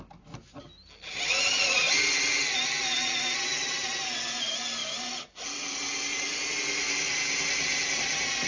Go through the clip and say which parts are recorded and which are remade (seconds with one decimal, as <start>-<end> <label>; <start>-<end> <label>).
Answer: 0.0-8.5 recorded